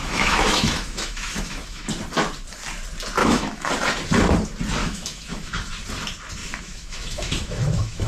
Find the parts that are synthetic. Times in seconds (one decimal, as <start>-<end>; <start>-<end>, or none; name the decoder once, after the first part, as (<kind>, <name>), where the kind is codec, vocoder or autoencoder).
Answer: 0.0-1.9 (autoencoder, DAC-VAE); 3.2-3.7; 4.8-5.7; 6.4-8.1